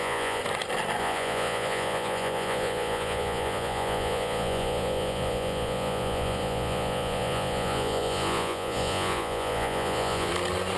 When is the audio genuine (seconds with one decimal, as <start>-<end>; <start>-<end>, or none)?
0.4-1.0; 10.3-10.8